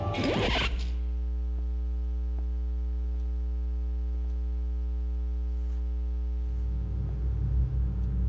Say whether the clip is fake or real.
real